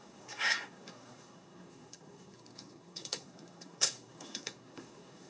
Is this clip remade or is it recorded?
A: remade